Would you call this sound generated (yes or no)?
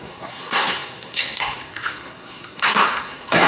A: yes